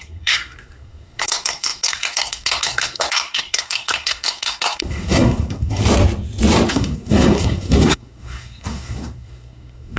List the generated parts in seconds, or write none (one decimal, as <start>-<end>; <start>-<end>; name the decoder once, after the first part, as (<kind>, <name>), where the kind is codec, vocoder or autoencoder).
0.0-5.8 (codec, SNAC); 6.7-10.0